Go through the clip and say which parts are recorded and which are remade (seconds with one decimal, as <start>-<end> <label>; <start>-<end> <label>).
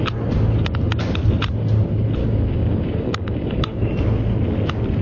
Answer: 0.0-2.2 recorded; 2.2-3.9 remade; 3.9-5.0 recorded